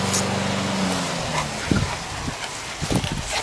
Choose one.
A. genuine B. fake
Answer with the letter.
A